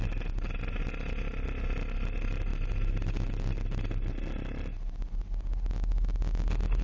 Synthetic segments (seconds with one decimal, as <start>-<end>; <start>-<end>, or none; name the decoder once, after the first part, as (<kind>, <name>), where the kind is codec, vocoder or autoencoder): none